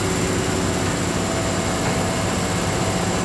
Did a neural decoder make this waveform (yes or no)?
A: no